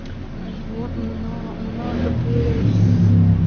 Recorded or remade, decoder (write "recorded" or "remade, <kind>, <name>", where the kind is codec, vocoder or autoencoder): recorded